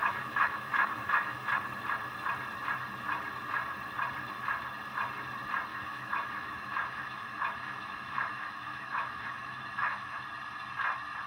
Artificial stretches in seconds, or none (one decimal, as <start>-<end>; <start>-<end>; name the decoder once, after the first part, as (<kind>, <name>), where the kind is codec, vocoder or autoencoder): 0.0-1.5 (autoencoder, DAC-VAE); 5.7-10.2